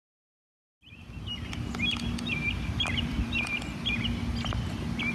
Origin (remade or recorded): recorded